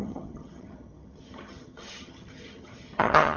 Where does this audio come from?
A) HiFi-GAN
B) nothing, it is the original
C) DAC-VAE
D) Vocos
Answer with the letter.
A